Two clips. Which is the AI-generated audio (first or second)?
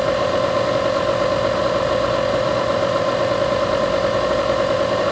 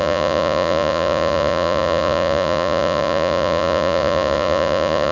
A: second